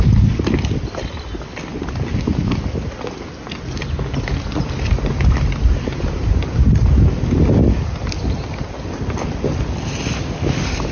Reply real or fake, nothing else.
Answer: real